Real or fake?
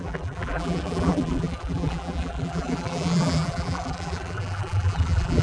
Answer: fake